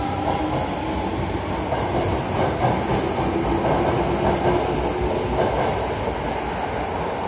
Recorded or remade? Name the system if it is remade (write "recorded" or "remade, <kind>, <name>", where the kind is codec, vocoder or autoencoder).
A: recorded